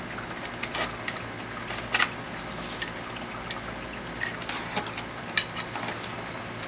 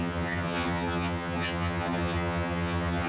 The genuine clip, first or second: first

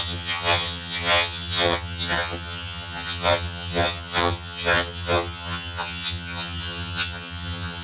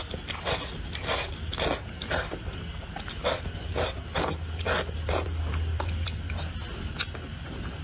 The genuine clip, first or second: second